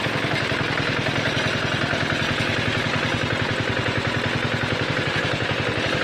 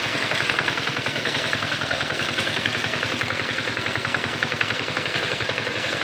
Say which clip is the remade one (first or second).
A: second